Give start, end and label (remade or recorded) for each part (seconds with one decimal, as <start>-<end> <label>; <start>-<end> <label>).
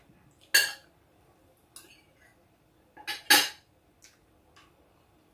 0.0-5.3 recorded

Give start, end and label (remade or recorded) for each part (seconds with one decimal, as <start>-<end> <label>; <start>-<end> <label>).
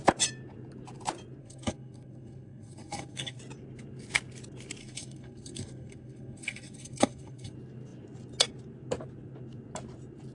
0.0-1.4 recorded; 1.4-3.4 remade; 3.4-4.8 recorded; 4.8-7.5 remade; 7.5-10.3 recorded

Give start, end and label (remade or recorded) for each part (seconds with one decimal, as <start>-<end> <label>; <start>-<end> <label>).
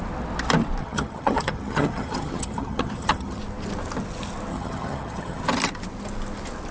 0.0-0.8 recorded; 0.8-3.4 remade; 3.4-4.5 recorded; 4.5-5.4 remade; 5.4-6.7 recorded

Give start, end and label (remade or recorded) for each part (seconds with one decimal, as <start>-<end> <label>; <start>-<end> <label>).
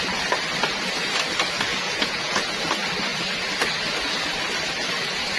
0.0-1.7 recorded; 1.7-2.5 remade; 2.5-5.4 recorded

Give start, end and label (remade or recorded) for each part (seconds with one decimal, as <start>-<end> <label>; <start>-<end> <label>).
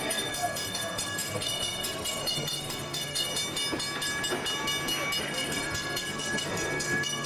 0.0-3.3 remade; 3.3-5.2 recorded; 5.2-7.3 remade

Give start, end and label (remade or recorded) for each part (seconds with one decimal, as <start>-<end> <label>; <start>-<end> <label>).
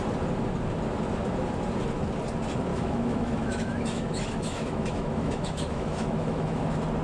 0.0-2.7 recorded; 2.7-6.6 remade; 6.6-7.0 recorded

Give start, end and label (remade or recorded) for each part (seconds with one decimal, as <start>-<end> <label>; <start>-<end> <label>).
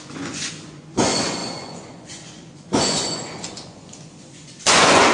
0.0-5.1 remade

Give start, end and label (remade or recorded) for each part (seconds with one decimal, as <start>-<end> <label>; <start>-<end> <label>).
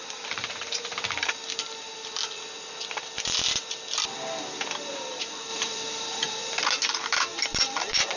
0.0-0.9 remade; 0.9-4.9 recorded; 4.9-8.2 remade